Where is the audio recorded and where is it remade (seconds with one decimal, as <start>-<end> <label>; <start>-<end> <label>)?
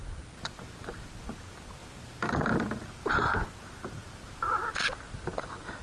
0.0-1.3 remade; 1.3-1.8 recorded; 1.8-3.2 remade; 3.2-4.0 recorded; 4.0-4.6 remade; 4.6-5.8 recorded